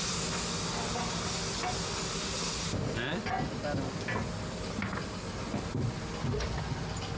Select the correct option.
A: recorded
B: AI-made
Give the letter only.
A